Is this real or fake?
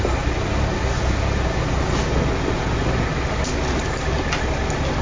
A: real